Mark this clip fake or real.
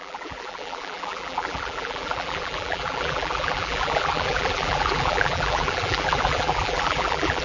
fake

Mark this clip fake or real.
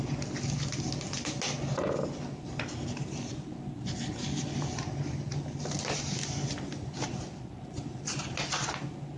real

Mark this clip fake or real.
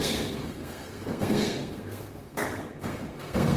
fake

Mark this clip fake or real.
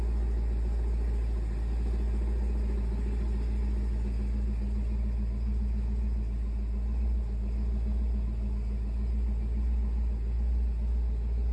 real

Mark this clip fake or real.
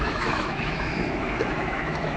fake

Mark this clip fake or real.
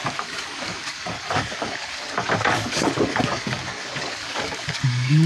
fake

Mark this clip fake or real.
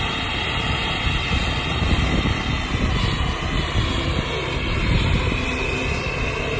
real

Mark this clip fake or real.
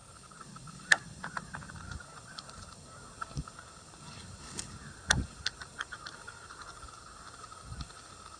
fake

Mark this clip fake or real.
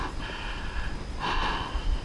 real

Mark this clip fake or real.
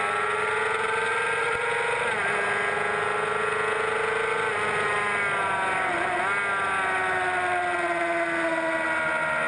real